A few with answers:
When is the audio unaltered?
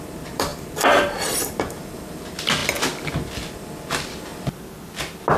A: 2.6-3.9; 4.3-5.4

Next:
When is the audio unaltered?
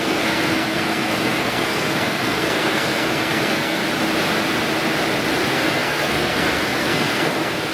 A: 3.8-5.5